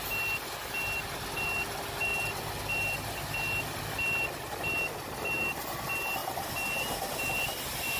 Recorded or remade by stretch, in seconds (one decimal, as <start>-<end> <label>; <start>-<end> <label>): 0.0-8.0 recorded

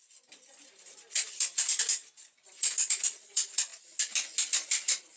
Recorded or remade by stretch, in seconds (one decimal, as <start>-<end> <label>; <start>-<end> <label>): 0.0-3.7 remade; 3.7-5.2 recorded

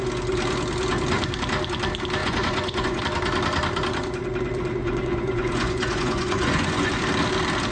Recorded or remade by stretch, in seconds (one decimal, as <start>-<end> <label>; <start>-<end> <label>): 0.0-2.2 recorded; 2.2-3.0 remade; 3.0-4.8 recorded; 4.8-6.9 remade; 6.9-7.7 recorded

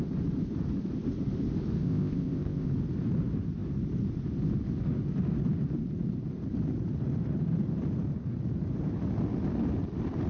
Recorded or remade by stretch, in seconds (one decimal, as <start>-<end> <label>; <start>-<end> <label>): 0.0-1.8 recorded; 1.8-2.7 remade; 2.7-10.3 recorded

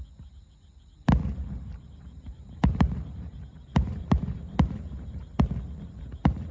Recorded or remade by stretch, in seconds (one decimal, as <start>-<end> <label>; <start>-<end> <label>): 0.0-1.4 recorded; 1.4-5.3 remade; 5.3-6.5 recorded

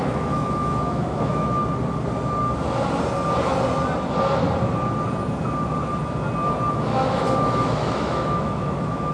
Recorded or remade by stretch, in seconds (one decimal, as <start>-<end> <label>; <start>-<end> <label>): 0.0-1.6 remade; 1.6-6.7 recorded; 6.7-9.1 remade

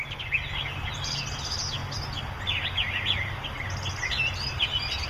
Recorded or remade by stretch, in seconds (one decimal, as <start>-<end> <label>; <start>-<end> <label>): 0.0-5.1 recorded

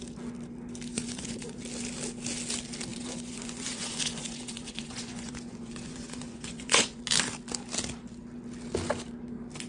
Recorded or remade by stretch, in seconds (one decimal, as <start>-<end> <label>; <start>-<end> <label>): 0.0-0.9 recorded; 0.9-1.6 remade; 1.6-2.9 recorded; 2.9-7.0 remade; 7.0-9.7 recorded